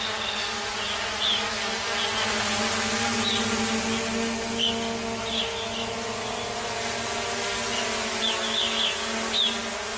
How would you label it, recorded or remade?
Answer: recorded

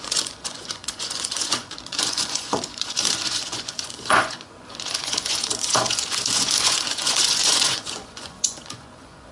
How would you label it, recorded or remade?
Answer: remade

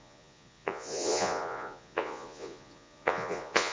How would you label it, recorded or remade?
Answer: remade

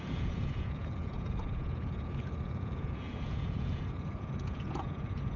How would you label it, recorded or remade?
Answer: remade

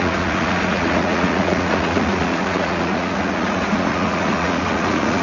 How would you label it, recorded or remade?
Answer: remade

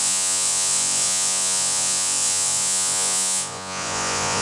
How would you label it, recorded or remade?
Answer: remade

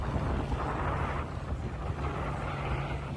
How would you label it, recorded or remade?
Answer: recorded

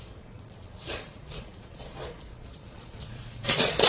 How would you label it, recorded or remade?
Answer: remade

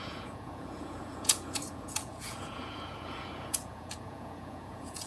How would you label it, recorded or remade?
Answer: remade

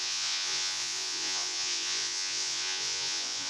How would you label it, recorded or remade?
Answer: remade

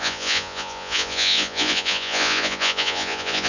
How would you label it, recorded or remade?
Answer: remade